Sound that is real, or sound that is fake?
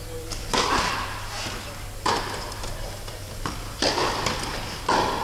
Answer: fake